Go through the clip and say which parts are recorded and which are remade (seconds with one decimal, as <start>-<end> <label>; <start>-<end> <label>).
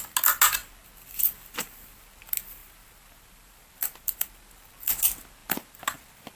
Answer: 0.0-2.6 recorded; 2.6-4.3 remade; 4.3-6.4 recorded